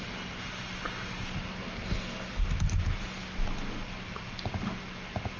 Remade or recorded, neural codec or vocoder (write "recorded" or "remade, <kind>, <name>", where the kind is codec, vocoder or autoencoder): recorded